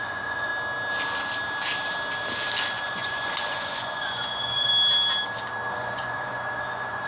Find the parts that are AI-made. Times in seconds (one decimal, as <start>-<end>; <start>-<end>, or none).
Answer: 0.0-0.5; 2.7-4.7; 5.7-7.1